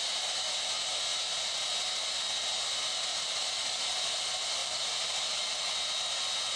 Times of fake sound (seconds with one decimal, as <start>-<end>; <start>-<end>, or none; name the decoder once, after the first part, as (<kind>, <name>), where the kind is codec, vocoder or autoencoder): 3.1-3.9 (vocoder, BigVGAN v2); 4.6-5.7